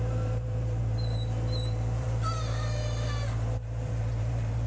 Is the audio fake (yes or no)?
yes